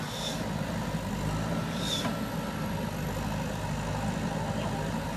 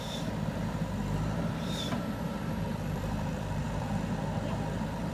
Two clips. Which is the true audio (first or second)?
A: first